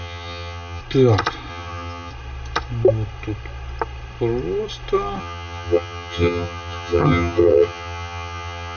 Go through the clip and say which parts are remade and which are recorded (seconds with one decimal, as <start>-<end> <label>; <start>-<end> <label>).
0.0-0.8 remade; 0.8-1.5 recorded; 1.5-2.1 remade; 2.1-5.2 recorded; 5.2-8.8 remade

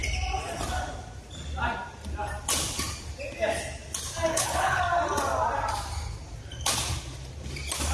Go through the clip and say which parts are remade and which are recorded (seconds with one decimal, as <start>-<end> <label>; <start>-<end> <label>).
0.0-4.3 recorded; 4.3-4.8 remade; 4.8-7.9 recorded

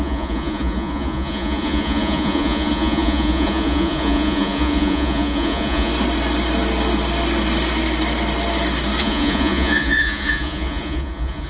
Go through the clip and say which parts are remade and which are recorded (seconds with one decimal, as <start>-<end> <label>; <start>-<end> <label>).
0.0-5.9 remade; 5.9-9.0 recorded; 9.0-11.5 remade

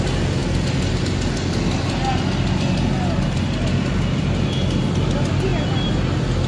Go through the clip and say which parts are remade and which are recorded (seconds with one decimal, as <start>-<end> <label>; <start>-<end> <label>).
0.0-5.5 recorded; 5.5-6.5 remade

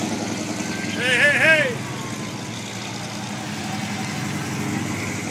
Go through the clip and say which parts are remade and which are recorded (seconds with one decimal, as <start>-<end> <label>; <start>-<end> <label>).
0.0-5.3 recorded

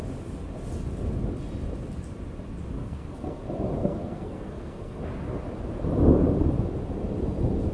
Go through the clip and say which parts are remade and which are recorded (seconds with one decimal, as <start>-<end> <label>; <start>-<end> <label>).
0.0-2.8 recorded; 2.8-3.4 remade; 3.4-3.8 recorded; 3.8-5.0 remade; 5.0-7.7 recorded

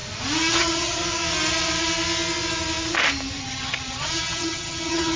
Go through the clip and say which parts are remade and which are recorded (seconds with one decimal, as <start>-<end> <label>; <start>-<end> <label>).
0.0-0.5 recorded; 0.5-1.0 remade; 1.0-3.4 recorded; 3.4-5.2 remade

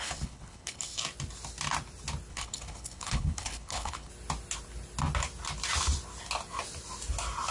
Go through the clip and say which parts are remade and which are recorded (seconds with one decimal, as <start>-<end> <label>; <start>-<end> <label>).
0.0-1.0 remade; 1.0-2.3 recorded; 2.3-4.1 remade; 4.1-7.5 recorded